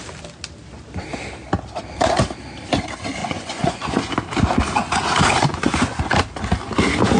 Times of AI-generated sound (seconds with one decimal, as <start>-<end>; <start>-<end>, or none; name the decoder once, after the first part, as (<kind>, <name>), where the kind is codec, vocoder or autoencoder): 3.2-4.1 (vocoder, Vocos); 5.5-6.1